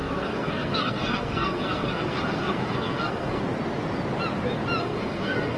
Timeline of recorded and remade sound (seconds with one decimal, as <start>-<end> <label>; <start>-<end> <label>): 0.0-3.4 remade; 3.4-4.8 recorded; 4.8-5.6 remade